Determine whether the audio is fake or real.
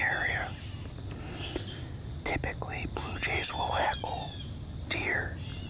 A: real